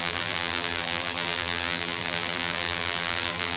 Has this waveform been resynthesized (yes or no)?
yes